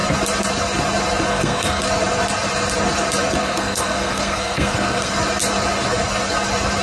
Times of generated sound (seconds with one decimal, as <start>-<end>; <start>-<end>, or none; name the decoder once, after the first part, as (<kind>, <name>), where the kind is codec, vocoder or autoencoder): 1.3-1.8 (codec, SNAC); 3.4-5.1